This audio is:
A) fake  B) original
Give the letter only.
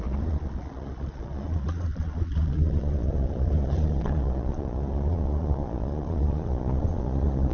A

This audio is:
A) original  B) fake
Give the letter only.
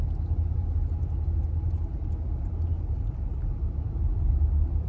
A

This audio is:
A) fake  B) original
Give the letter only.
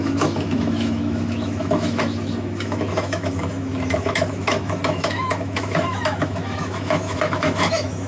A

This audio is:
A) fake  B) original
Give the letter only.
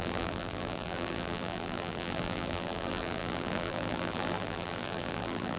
A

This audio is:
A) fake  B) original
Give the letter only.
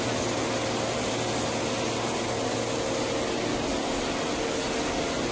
B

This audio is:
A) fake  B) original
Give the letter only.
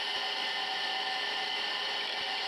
B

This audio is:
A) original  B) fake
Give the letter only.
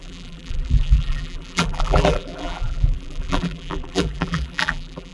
B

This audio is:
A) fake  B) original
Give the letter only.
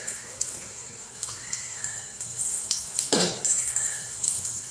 A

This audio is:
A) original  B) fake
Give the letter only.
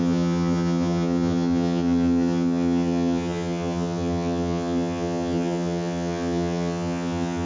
B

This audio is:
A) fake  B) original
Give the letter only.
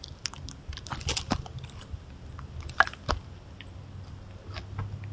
B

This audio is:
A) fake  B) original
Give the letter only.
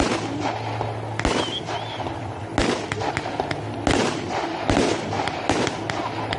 B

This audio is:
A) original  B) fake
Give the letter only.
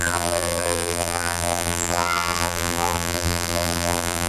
B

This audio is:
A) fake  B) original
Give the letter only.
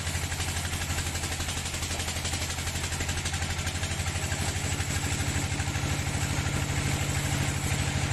B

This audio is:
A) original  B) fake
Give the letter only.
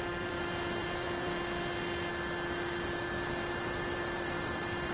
B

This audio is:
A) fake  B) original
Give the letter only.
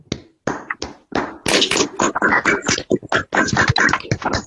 B